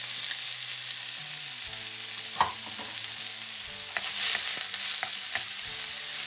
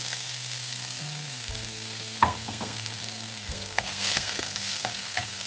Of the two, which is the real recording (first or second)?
first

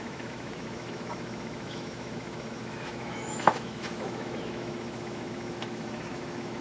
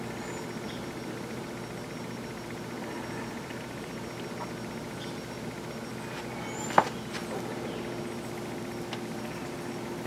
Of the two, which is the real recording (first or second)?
second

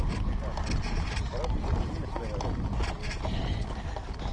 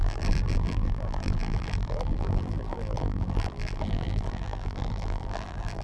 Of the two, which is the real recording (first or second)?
first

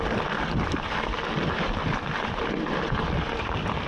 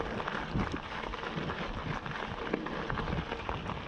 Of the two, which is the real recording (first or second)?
second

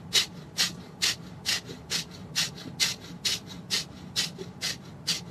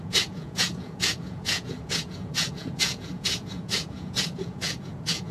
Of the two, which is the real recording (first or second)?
first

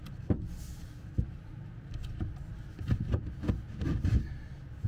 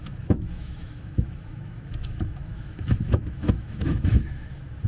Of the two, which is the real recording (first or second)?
first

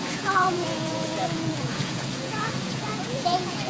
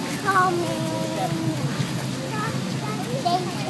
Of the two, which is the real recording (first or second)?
second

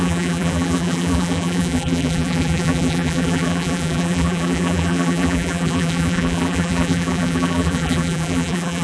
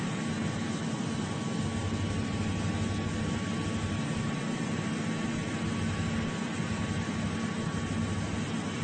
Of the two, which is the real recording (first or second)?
second